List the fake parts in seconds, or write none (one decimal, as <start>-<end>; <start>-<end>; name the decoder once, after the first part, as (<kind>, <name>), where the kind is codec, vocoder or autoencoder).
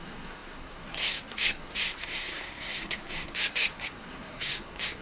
0.0-5.0 (codec, SNAC)